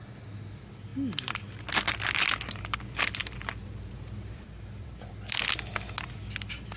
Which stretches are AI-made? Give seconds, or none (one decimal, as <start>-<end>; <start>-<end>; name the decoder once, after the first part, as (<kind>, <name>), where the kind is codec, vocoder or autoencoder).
3.6-5.2 (vocoder, BigVGAN v2)